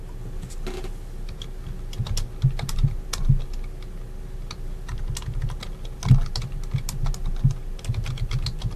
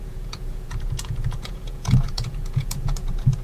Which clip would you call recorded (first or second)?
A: first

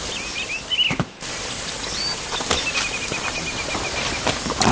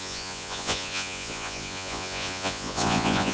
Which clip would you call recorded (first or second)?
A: first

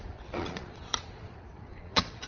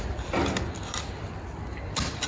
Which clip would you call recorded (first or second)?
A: second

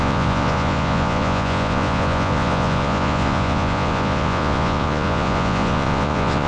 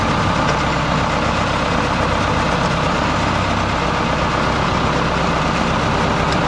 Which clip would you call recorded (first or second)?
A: second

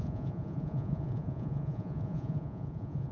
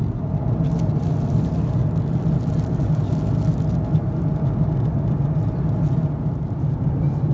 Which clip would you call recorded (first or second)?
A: second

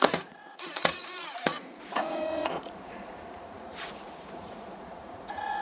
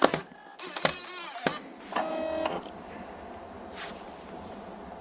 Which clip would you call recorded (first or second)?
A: second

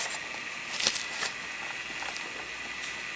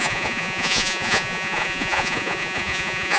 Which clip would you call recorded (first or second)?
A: first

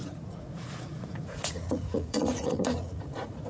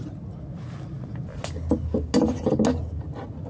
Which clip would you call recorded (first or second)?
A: second